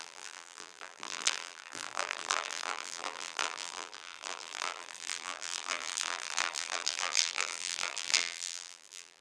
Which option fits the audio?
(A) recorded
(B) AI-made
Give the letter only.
B